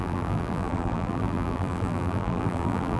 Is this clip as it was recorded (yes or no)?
no